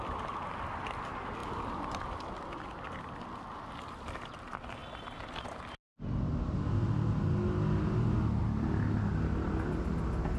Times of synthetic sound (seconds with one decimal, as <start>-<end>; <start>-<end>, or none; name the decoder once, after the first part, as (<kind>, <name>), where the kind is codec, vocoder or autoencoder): 1.4-2.6 (vocoder, BigVGAN v2)